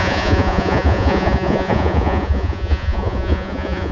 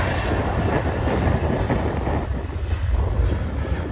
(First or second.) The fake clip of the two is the first